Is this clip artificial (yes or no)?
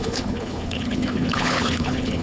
yes